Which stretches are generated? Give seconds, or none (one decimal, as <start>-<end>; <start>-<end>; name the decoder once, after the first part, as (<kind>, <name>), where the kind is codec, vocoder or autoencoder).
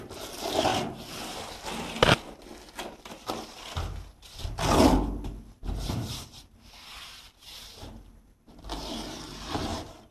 0.0-0.7 (vocoder, BigVGAN v2); 5.9-10.1